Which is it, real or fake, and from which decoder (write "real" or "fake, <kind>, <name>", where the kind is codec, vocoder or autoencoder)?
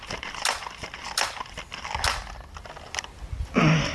real